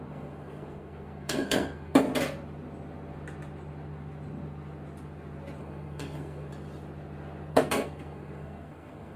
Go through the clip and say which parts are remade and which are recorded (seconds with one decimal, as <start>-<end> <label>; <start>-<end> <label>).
0.0-2.1 remade; 2.1-5.6 recorded; 5.6-6.5 remade; 6.5-7.5 recorded; 7.5-9.2 remade